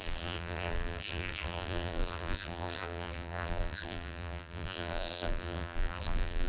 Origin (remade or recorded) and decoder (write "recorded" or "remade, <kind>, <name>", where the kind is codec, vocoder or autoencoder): remade, vocoder, BigVGAN v2